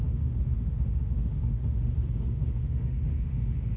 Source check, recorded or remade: remade